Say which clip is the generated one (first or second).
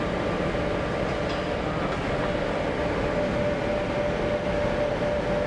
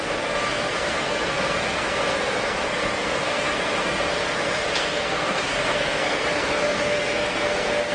second